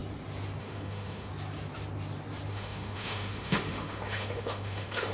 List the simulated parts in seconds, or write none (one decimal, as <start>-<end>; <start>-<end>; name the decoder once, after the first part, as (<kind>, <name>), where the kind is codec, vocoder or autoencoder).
0.6-1.3 (autoencoder, DAC-VAE); 2.5-5.1